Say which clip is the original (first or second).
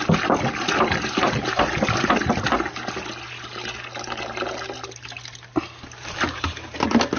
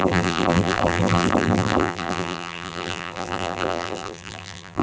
first